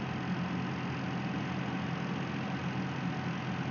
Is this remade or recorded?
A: recorded